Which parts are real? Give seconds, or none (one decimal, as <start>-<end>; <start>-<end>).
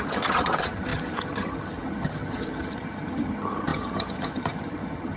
none